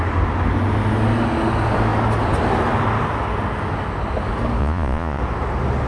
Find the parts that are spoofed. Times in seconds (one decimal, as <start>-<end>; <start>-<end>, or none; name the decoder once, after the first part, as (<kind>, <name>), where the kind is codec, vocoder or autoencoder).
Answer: 4.6-5.2 (vocoder, Vocos)